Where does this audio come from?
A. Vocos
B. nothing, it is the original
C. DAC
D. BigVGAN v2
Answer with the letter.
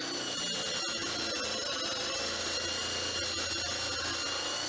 B